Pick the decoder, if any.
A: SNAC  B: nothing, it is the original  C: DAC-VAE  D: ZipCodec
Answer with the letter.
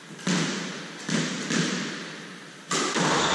B